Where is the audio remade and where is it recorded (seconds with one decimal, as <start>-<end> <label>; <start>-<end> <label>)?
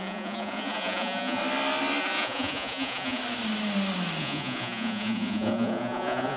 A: 0.0-1.4 remade; 1.4-2.0 recorded; 2.0-3.2 remade; 3.2-4.2 recorded; 4.2-6.4 remade